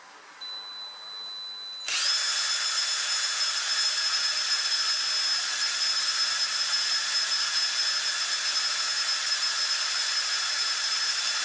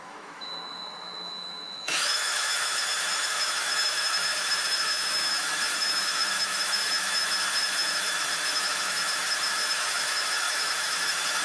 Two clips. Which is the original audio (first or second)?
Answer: first